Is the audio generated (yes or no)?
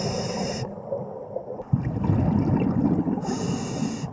no